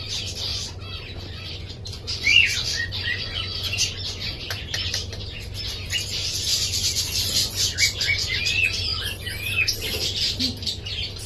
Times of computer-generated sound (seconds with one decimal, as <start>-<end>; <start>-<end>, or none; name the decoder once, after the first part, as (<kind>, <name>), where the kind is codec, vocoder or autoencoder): 0.5-4.9 (vocoder, Vocos); 6.5-8.4